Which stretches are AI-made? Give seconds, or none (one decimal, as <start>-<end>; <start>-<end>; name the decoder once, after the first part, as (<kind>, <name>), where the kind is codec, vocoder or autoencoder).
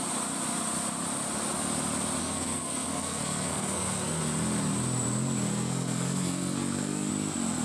2.2-4.2 (codec, SNAC); 5.5-7.1